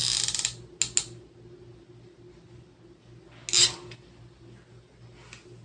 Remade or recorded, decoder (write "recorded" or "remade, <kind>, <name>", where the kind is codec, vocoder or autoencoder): recorded